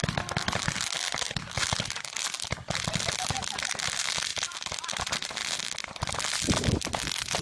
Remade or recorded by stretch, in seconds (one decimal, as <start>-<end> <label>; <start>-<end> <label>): 0.0-7.4 recorded

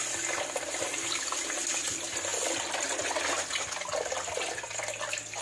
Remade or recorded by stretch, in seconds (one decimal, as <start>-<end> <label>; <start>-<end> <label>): 0.0-5.4 recorded